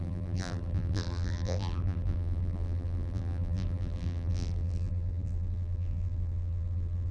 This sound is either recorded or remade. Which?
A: remade